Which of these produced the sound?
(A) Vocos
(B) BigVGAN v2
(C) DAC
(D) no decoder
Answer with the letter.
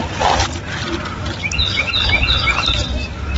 B